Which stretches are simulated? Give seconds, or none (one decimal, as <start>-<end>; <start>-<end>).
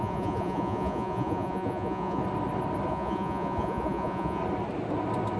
0.0-2.2; 2.9-4.4